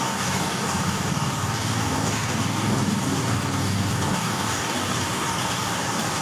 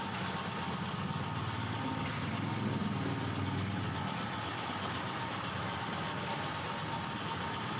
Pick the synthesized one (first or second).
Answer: first